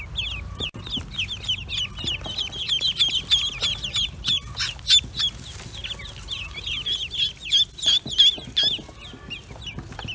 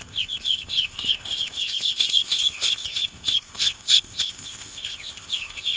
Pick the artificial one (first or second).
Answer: second